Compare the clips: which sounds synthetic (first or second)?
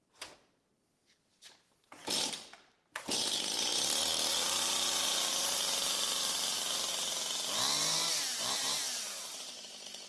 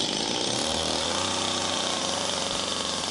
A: second